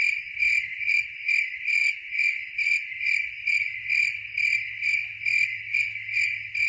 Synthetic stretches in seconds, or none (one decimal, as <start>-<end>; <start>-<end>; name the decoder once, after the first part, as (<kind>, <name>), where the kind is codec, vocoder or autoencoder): none